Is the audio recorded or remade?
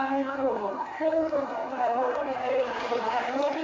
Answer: remade